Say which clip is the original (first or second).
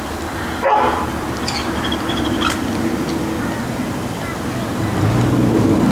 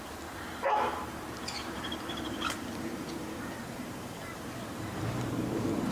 first